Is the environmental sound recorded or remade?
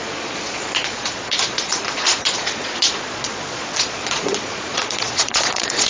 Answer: remade